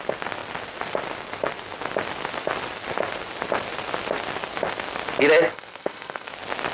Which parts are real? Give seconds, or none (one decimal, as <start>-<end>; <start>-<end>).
0.0-5.5; 6.3-6.7